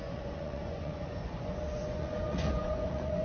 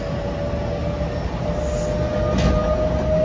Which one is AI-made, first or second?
first